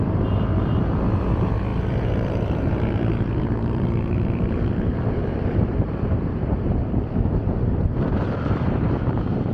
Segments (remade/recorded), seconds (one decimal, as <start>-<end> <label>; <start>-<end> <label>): 0.0-9.5 remade